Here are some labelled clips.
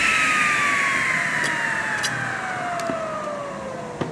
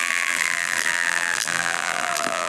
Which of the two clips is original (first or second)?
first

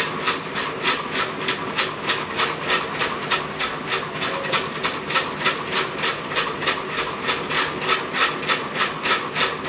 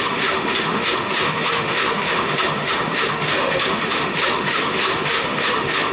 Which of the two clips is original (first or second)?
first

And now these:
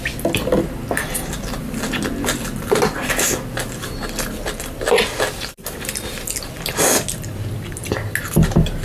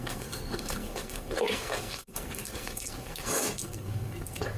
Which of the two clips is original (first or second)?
first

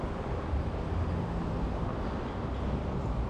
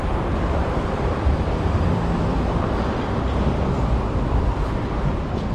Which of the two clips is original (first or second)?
first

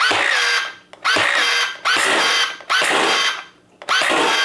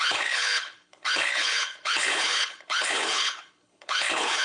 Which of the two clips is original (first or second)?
first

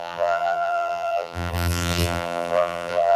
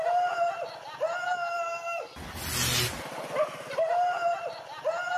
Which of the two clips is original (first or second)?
second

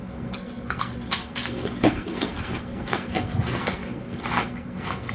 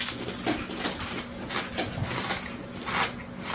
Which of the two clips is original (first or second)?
second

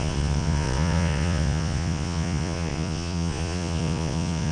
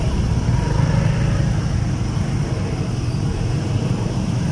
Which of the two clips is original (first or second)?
second